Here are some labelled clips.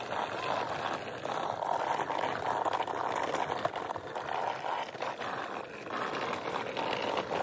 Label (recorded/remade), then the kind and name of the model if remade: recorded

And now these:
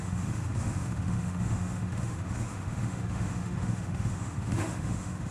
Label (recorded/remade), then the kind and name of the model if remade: remade, autoencoder, DAC-VAE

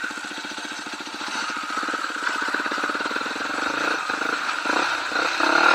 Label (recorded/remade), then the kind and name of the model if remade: recorded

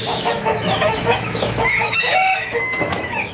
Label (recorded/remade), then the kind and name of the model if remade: remade, autoencoder, DAC-VAE